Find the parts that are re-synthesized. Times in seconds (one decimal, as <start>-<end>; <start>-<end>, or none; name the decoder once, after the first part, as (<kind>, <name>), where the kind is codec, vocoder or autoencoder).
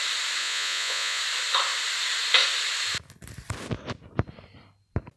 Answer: 0.4-1.2 (vocoder, Vocos)